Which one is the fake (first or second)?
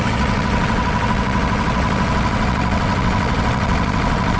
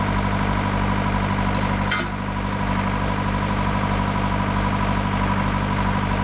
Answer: first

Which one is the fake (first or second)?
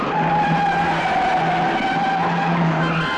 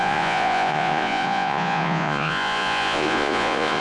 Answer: second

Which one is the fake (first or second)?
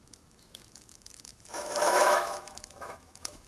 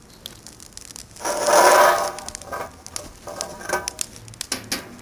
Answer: first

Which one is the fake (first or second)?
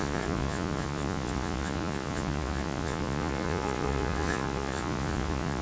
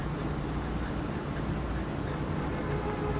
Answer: first